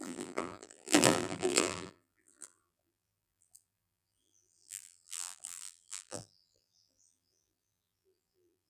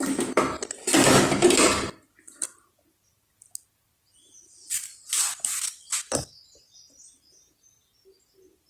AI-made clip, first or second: first